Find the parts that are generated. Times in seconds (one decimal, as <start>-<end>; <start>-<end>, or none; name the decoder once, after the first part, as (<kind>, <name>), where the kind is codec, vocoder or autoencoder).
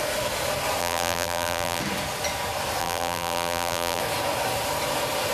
0.8-1.8 (vocoder, BigVGAN v2); 2.8-4.0